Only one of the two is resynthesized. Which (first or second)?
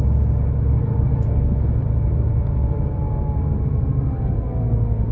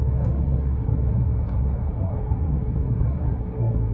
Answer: second